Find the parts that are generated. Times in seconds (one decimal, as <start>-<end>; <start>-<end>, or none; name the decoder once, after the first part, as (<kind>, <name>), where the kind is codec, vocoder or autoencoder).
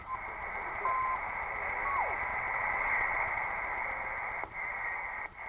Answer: 2.3-3.3 (vocoder, WaveNeXt)